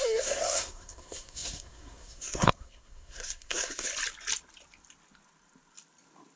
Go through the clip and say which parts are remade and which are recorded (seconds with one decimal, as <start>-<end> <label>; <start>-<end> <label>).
0.0-3.9 remade; 3.9-6.4 recorded